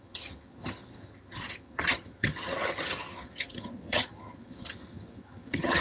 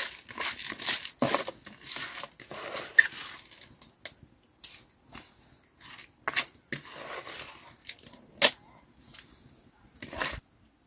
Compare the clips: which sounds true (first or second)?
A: second